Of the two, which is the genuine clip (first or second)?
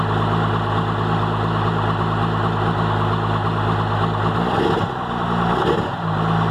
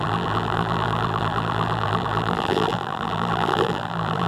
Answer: first